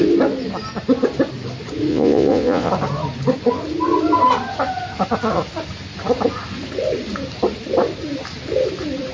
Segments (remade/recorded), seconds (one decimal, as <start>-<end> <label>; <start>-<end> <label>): 0.0-1.9 recorded; 1.9-2.7 remade; 2.7-9.1 recorded

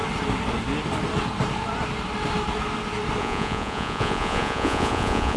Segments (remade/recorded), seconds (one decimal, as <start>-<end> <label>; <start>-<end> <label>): 0.0-3.2 recorded; 3.2-5.4 remade

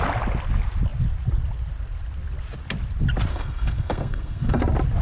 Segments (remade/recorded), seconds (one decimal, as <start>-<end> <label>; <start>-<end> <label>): 0.0-3.3 recorded; 3.3-4.6 remade; 4.6-5.0 recorded

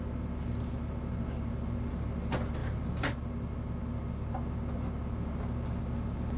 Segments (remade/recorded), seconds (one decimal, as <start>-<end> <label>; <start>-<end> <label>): 0.0-6.4 recorded

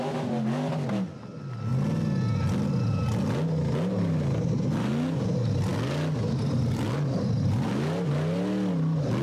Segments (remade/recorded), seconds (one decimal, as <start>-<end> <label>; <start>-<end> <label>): 0.0-9.2 recorded